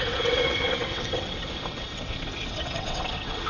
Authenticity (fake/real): fake